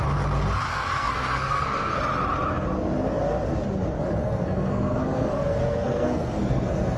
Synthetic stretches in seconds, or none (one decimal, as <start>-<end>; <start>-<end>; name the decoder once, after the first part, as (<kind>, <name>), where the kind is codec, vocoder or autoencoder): 0.7-2.0 (codec, SNAC); 4.2-7.0